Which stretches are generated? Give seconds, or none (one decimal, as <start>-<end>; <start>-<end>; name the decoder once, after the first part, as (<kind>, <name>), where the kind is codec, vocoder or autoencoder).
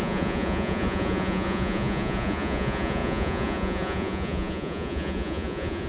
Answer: 0.0-5.9 (vocoder, Vocos)